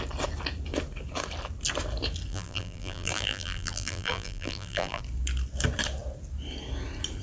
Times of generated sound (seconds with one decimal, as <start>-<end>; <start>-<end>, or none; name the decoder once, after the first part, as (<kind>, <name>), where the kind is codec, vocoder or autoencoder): 2.3-5.0 (vocoder, BigVGAN v2)